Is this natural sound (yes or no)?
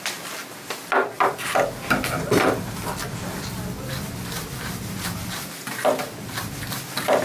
yes